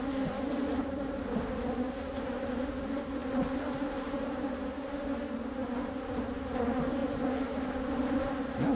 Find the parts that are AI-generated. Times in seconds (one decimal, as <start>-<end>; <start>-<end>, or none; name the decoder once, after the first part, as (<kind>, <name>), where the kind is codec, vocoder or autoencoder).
3.2-4.4 (vocoder, BigVGAN v2); 5.6-6.6; 7.0-7.7